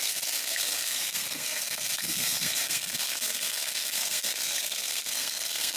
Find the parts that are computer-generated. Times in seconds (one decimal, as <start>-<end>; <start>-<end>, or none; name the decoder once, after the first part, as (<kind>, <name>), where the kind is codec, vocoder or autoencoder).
0.0-5.8 (codec, SNAC)